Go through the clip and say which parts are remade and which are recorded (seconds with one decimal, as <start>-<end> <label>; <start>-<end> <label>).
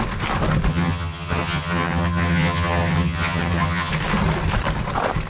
0.0-0.7 recorded; 0.7-3.9 remade; 3.9-5.3 recorded